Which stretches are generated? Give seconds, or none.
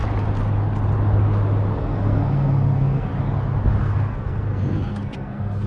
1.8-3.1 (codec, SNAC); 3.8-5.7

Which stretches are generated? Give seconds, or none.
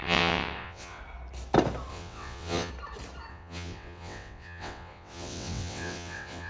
0.0-1.0 (vocoder, WaveNeXt); 1.9-2.7; 3.3-6.5